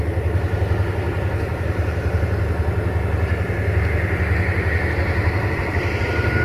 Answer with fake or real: real